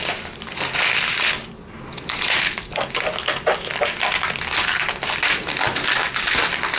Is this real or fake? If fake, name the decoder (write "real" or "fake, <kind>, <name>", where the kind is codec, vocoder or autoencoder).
real